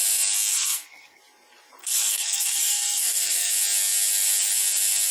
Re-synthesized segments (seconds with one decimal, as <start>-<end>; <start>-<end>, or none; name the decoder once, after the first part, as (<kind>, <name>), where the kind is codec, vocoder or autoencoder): 0.5-1.2 (codec, SNAC); 1.8-3.5